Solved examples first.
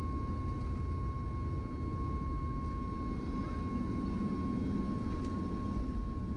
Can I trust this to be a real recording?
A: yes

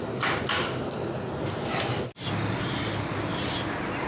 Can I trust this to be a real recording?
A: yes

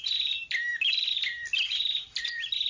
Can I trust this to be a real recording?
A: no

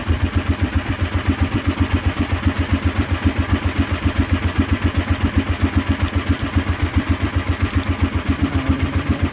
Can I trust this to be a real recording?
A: no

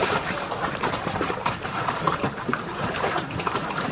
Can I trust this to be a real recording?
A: no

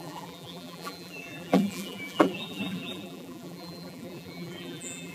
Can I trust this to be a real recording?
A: no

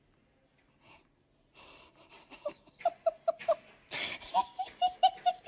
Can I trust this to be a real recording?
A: yes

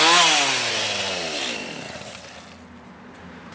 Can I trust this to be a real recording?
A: yes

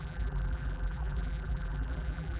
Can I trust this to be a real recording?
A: no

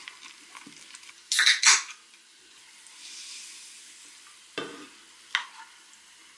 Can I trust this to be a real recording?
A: yes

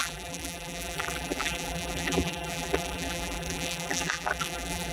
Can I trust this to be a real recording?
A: no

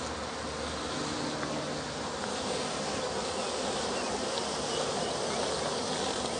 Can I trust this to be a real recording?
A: yes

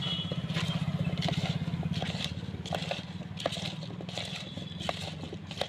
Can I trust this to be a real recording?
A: yes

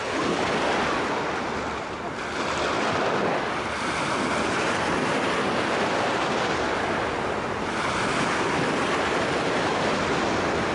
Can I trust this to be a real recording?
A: yes